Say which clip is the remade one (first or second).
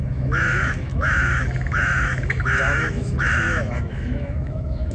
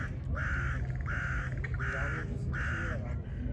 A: first